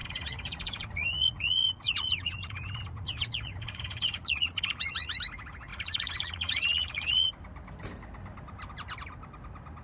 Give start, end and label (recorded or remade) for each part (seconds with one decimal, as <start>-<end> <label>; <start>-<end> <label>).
0.0-5.2 remade; 5.2-5.7 recorded; 5.7-7.3 remade; 7.3-9.8 recorded